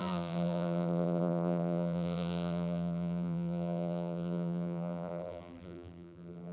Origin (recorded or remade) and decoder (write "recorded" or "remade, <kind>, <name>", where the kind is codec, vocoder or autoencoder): remade, vocoder, BigVGAN v2